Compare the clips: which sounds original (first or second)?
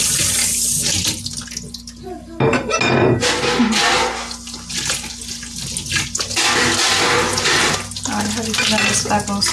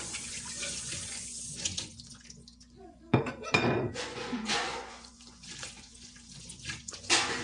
first